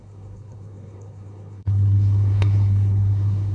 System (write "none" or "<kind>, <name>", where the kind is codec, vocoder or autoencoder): codec, SNAC